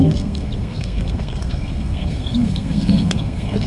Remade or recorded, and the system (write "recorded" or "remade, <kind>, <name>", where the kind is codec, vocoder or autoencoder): remade, codec, SNAC